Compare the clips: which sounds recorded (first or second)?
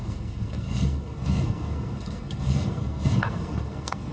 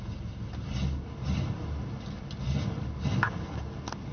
second